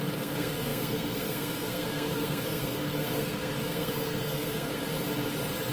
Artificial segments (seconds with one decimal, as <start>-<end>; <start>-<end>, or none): 0.0-4.8